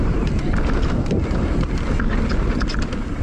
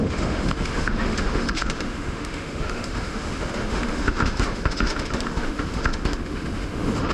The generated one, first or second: second